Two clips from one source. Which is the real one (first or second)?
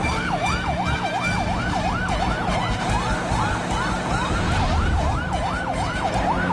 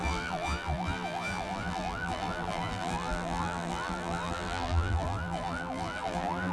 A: first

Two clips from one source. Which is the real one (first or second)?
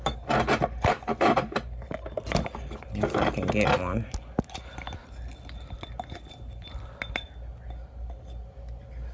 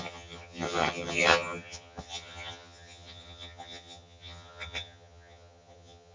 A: first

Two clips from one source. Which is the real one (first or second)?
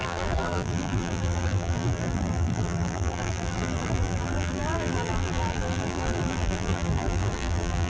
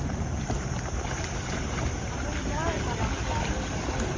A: second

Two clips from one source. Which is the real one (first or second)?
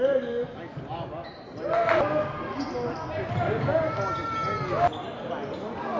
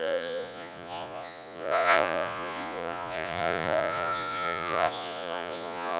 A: first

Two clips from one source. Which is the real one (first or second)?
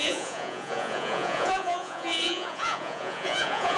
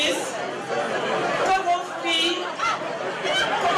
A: second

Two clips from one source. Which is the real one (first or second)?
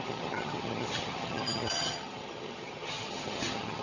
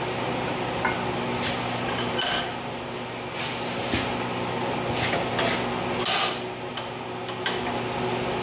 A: second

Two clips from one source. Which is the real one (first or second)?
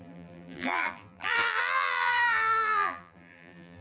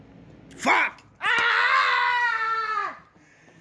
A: second